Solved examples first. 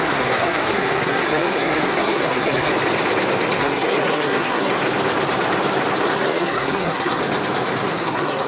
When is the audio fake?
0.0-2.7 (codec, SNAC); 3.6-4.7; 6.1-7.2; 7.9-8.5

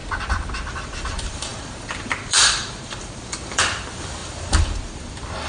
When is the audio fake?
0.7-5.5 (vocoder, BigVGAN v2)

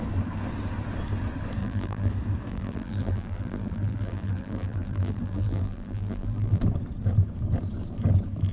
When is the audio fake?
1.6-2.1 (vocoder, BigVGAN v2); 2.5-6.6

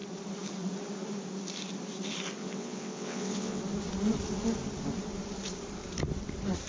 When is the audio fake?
2.4-3.6 (vocoder, WaveNeXt)

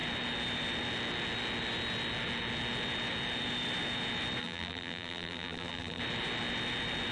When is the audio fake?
4.4-6.0 (vocoder, BigVGAN v2)

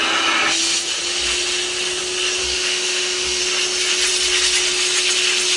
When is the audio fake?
2.4-3.4 (autoencoder, DAC-VAE)

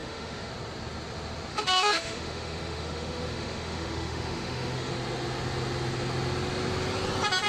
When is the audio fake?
0.0-0.5 (autoencoder, DAC-VAE); 1.5-4.9

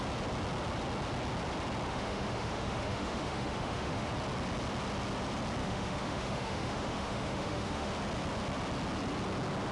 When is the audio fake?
1.9-4.1 (autoencoder, DAC-VAE); 5.6-7.9